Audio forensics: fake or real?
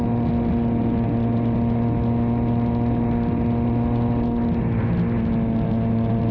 real